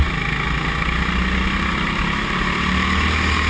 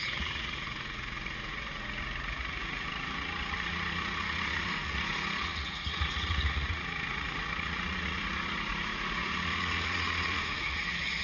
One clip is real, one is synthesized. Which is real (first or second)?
first